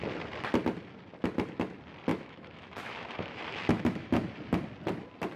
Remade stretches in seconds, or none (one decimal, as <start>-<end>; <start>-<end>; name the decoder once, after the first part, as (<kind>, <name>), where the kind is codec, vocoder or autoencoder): 2.1-4.2 (autoencoder, DAC-VAE)